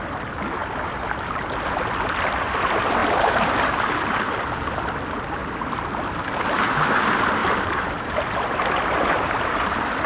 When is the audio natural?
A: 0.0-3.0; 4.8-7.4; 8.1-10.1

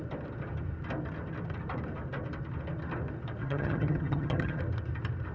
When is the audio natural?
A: 0.0-3.4; 4.6-5.3